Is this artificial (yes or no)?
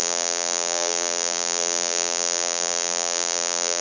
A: yes